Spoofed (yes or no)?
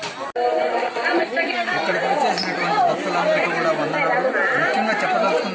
no